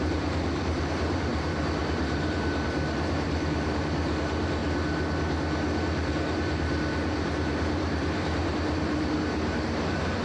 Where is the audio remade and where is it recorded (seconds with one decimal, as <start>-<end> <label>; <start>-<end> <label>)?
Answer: 0.0-4.6 remade; 4.6-6.1 recorded; 6.1-10.2 remade

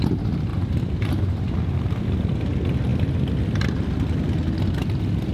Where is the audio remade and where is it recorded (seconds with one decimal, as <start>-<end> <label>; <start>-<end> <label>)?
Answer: 0.0-0.5 recorded; 0.5-1.5 remade; 1.5-5.3 recorded

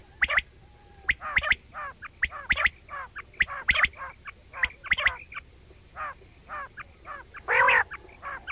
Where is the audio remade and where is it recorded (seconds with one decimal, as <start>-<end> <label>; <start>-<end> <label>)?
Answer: 0.0-8.5 recorded

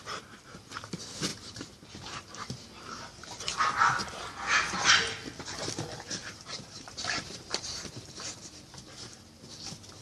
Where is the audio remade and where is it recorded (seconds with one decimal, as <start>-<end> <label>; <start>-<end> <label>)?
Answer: 0.0-1.3 recorded; 1.3-3.4 remade; 3.4-6.2 recorded; 6.2-7.8 remade; 7.8-8.4 recorded; 8.4-9.4 remade; 9.4-10.0 recorded

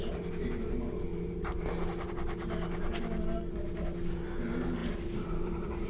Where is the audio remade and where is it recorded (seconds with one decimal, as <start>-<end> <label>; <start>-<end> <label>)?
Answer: 0.0-4.8 recorded; 4.8-5.9 remade

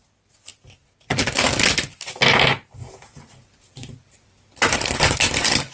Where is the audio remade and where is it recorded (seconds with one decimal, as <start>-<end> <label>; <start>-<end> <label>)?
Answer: 0.0-2.8 recorded; 2.8-5.2 remade; 5.2-5.7 recorded

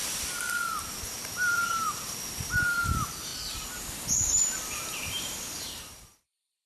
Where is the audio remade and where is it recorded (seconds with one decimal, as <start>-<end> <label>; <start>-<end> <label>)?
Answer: 0.0-1.0 recorded; 1.0-3.3 remade; 3.3-4.7 recorded; 4.7-6.7 remade